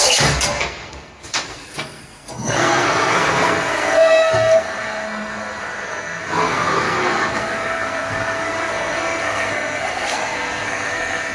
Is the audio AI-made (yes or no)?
yes